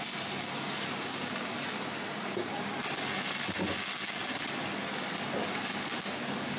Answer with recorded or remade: recorded